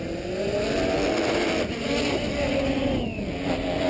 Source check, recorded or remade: recorded